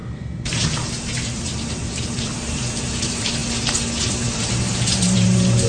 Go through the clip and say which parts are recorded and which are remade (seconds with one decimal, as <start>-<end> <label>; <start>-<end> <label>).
0.0-3.4 remade; 3.4-4.1 recorded; 4.1-5.7 remade